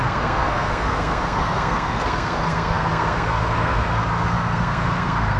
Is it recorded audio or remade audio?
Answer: remade